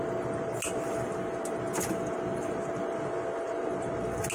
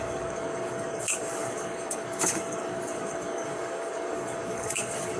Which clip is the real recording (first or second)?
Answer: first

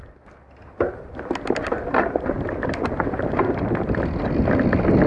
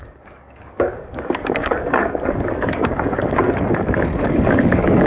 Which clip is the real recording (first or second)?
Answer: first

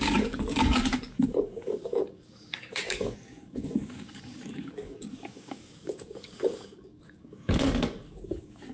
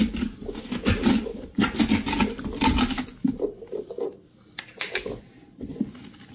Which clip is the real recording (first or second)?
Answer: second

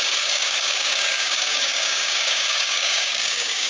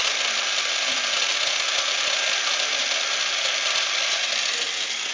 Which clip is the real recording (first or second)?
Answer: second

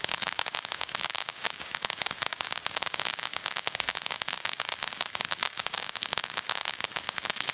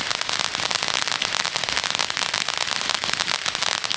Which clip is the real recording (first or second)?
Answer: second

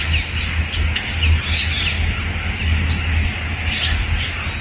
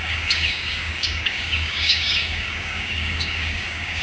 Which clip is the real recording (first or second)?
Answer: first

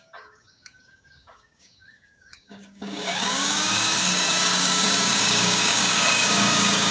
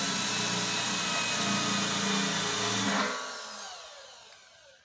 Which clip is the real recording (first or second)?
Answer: second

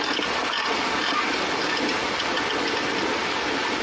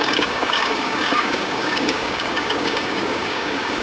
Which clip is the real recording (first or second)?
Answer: first